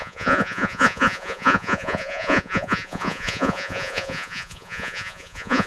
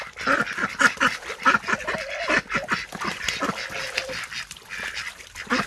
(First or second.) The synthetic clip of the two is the first